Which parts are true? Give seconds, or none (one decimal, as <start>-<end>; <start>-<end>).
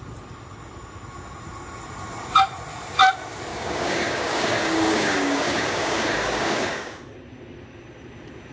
0.0-3.5; 7.0-8.5